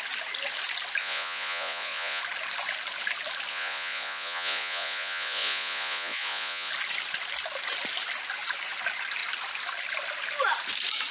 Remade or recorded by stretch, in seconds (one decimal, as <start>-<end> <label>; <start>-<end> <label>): 0.0-1.0 recorded; 1.0-2.2 remade; 2.2-3.5 recorded; 3.5-6.7 remade; 6.7-11.1 recorded